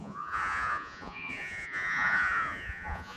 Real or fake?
fake